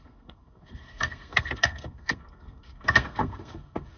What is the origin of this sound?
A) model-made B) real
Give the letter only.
A